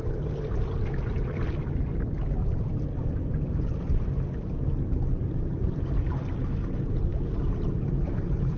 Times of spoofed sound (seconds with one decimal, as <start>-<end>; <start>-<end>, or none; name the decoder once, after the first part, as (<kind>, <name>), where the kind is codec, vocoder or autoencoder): 2.4-3.3 (vocoder, BigVGAN v2)